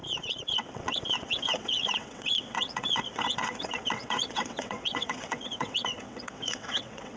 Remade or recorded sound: remade